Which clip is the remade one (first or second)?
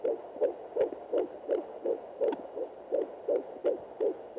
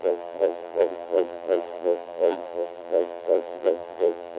second